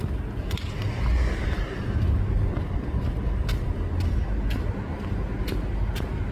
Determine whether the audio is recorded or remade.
recorded